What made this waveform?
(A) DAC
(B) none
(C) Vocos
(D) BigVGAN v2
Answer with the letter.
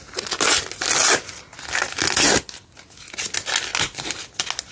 B